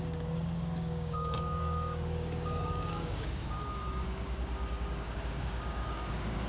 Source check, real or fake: fake